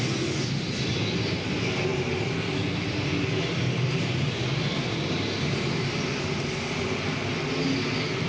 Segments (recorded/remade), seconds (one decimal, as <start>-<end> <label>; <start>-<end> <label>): 0.0-8.3 recorded